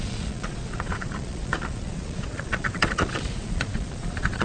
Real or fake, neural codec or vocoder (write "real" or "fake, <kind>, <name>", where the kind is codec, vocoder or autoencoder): fake, vocoder, Vocos